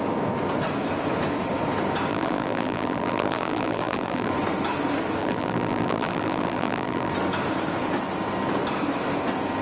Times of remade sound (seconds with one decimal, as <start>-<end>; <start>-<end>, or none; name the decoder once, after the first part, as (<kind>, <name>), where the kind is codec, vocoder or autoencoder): 2.1-4.3 (vocoder, BigVGAN v2); 5.2-7.1